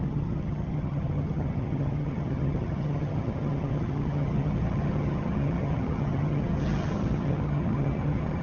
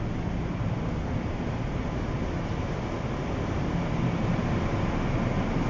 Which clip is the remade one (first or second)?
first